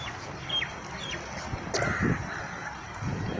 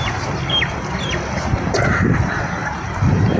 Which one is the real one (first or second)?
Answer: first